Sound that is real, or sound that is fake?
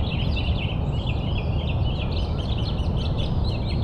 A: real